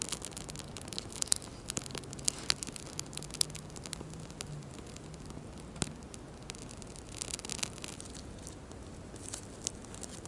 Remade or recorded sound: recorded